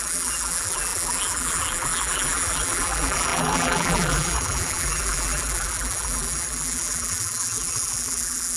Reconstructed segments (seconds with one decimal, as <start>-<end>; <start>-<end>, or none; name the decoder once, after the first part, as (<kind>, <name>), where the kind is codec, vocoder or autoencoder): 0.0-8.6 (vocoder, BigVGAN v2)